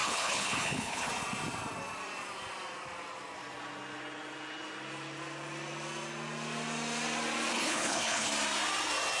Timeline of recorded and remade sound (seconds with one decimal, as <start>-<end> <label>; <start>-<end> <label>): 0.0-1.1 remade; 1.1-7.5 recorded; 7.5-8.3 remade; 8.3-9.2 recorded